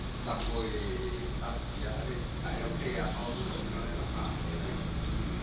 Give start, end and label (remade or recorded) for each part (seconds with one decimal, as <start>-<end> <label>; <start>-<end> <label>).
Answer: 0.0-5.4 recorded